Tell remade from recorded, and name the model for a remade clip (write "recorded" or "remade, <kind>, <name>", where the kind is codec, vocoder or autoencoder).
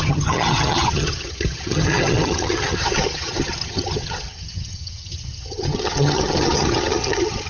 remade, vocoder, HiFi-GAN